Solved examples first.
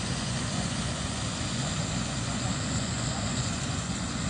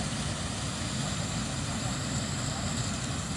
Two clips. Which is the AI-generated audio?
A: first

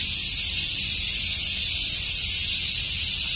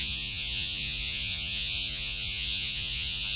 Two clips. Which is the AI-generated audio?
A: second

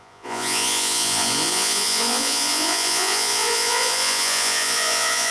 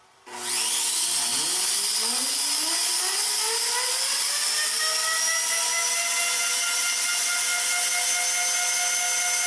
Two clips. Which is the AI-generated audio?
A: first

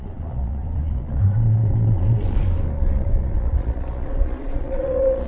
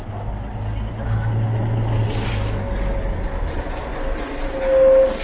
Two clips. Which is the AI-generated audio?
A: first